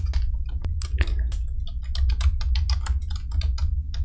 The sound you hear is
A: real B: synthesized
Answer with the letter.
A